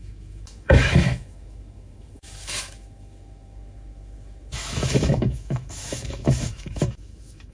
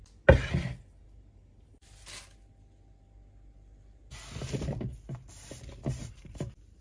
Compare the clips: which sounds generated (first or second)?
first